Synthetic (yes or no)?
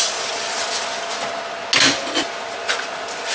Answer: no